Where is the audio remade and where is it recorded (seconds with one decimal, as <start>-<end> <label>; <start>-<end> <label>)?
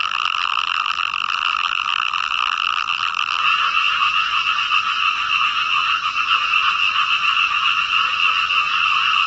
0.0-3.4 remade; 3.4-9.3 recorded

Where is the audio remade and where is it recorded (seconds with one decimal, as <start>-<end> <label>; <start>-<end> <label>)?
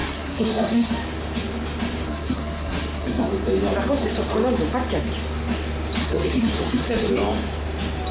0.0-0.9 remade; 0.9-2.1 recorded; 2.1-3.3 remade; 3.3-6.0 recorded; 6.0-7.1 remade; 7.1-8.1 recorded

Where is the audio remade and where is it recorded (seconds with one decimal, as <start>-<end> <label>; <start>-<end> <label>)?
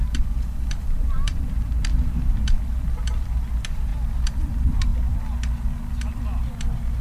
0.0-0.7 recorded; 0.7-1.9 remade; 1.9-3.5 recorded; 3.5-3.9 remade; 3.9-4.4 recorded; 4.4-4.9 remade; 4.9-7.0 recorded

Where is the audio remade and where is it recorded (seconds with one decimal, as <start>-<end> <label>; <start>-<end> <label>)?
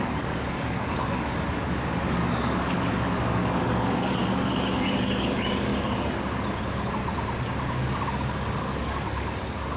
0.0-5.7 remade; 5.7-6.6 recorded; 6.6-7.0 remade; 7.0-7.8 recorded; 7.8-9.8 remade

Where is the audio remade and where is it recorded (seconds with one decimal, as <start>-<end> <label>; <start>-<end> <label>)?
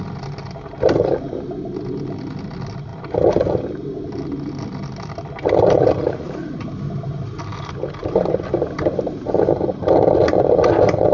0.0-6.0 recorded; 6.0-6.7 remade; 6.7-11.1 recorded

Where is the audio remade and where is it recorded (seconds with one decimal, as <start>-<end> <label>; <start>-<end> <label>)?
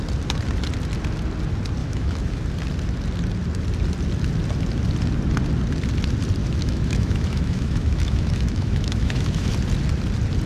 0.0-1.8 recorded; 1.8-2.4 remade; 2.4-6.4 recorded; 6.4-9.5 remade; 9.5-10.5 recorded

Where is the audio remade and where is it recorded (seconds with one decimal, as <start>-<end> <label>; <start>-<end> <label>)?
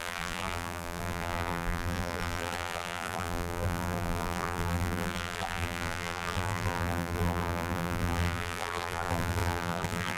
0.0-10.2 remade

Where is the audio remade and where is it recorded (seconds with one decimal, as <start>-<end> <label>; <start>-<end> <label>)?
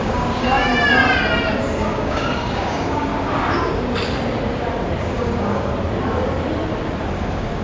0.0-0.7 remade; 0.7-1.6 recorded; 1.6-3.1 remade; 3.1-5.0 recorded; 5.0-5.7 remade; 5.7-7.1 recorded; 7.1-7.6 remade